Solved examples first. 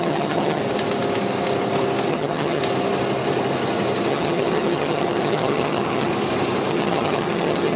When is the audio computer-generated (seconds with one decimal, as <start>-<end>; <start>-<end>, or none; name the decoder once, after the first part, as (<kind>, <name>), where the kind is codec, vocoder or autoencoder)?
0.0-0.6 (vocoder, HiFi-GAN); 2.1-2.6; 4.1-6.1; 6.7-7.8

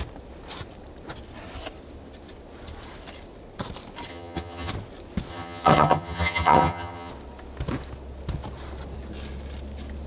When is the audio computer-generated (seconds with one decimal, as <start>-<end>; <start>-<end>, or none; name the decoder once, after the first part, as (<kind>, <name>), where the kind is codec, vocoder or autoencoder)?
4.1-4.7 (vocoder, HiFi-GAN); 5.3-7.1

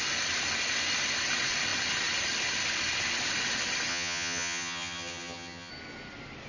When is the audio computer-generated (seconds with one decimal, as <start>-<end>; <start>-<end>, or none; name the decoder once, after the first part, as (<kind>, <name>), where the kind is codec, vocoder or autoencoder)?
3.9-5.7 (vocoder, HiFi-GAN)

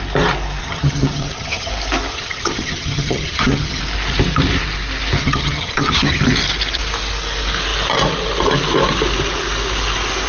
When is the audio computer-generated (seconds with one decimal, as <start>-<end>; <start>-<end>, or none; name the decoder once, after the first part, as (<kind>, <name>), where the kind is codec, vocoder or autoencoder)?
0.6-1.7 (vocoder, HiFi-GAN); 2.1-3.8; 5.2-6.2

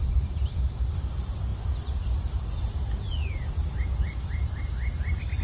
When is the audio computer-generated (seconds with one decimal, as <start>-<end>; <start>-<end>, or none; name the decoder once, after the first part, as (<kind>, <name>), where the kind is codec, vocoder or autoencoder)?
none

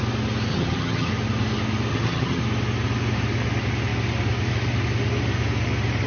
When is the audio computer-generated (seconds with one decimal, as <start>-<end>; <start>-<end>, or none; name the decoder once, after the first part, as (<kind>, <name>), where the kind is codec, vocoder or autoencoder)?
0.5-1.1 (vocoder, HiFi-GAN); 1.9-2.4